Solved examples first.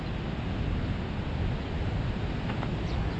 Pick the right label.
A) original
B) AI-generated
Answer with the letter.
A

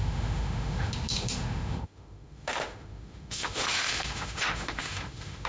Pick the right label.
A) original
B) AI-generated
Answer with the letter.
B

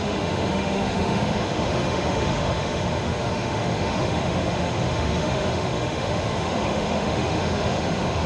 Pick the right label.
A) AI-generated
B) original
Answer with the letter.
A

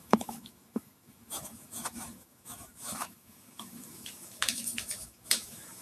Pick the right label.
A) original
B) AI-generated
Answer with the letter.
B